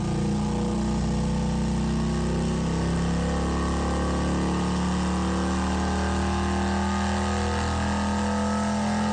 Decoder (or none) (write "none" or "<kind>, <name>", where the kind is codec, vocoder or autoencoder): none